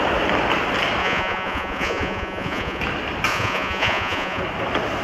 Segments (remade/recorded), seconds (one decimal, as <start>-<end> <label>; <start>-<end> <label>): 0.0-1.0 recorded; 1.0-2.8 remade; 2.8-3.3 recorded; 3.3-4.4 remade; 4.4-5.0 recorded